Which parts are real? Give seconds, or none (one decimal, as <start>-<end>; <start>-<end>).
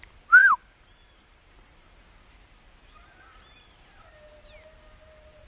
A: 0.0-0.4; 1.5-5.5